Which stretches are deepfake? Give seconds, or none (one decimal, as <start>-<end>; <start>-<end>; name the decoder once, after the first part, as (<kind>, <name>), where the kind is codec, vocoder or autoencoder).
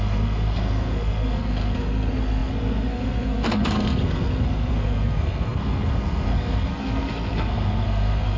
0.0-8.4 (codec, SNAC)